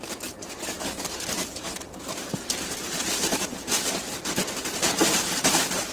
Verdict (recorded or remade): remade